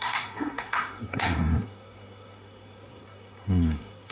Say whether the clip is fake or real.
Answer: fake